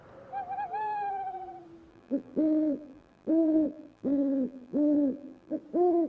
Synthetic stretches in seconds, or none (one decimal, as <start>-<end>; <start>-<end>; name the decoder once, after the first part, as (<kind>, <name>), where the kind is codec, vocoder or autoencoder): 1.9-5.6 (vocoder, BigVGAN v2)